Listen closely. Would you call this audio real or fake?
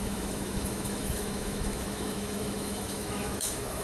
fake